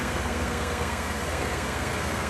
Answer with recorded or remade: remade